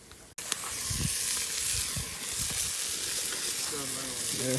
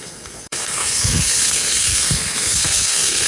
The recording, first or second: first